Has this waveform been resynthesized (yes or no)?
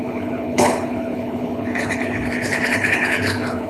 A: yes